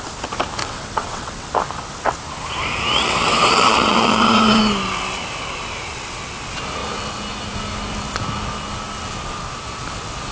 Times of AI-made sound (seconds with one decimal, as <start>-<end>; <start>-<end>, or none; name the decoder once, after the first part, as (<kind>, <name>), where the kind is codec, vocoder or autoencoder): 0.6-1.5 (vocoder, WaveNeXt); 2.9-4.6